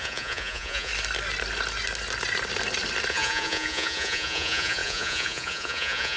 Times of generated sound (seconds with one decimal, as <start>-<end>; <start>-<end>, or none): 0.0-0.9; 3.1-6.2